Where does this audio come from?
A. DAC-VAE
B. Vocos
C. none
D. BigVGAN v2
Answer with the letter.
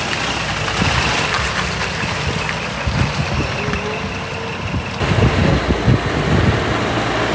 C